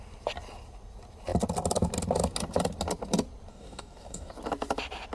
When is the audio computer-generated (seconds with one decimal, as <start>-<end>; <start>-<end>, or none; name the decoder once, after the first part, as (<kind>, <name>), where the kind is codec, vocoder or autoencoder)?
3.5-4.3 (codec, DAC)